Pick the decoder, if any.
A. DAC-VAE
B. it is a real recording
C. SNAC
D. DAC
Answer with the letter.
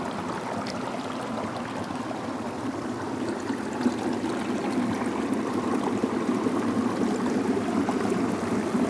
B